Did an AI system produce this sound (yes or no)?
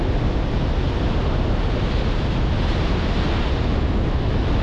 no